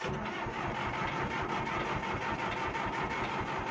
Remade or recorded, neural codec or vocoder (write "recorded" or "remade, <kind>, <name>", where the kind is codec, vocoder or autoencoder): recorded